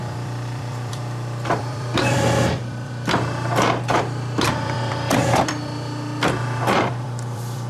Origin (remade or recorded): remade